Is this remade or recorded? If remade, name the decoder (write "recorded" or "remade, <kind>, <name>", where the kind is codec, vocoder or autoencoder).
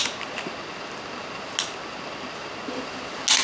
recorded